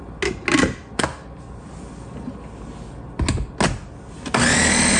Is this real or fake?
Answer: real